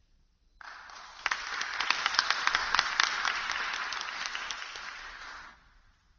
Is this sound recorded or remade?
recorded